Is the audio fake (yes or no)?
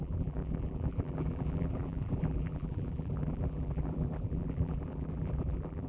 yes